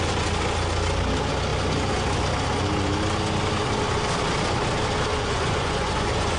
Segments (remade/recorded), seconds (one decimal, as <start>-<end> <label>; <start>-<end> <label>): 0.0-5.1 recorded; 5.1-6.4 remade